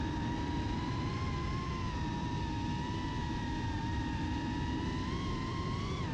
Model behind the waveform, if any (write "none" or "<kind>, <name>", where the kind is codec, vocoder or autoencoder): vocoder, BigVGAN v2